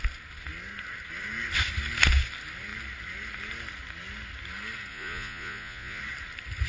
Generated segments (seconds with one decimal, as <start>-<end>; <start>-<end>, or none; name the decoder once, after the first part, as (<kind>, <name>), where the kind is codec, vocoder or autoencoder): 4.9-6.0 (vocoder, Vocos)